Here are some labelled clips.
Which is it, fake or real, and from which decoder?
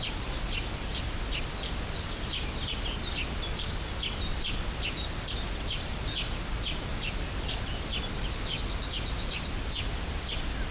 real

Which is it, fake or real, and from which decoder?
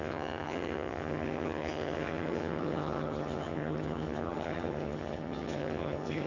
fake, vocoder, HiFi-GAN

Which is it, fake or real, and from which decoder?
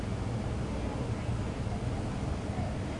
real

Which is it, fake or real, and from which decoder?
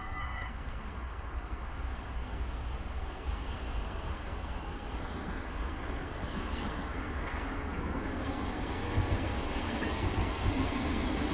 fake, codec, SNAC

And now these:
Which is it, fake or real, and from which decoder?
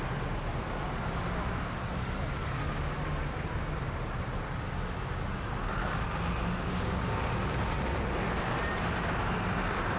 real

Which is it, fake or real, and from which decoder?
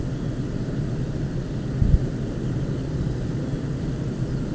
real